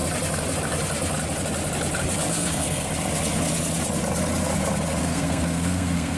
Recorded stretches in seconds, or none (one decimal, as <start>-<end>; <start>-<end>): 0.0-2.3; 2.9-5.0